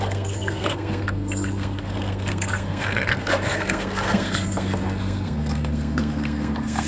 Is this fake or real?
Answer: fake